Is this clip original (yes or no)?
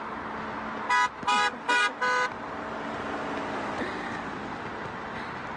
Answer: yes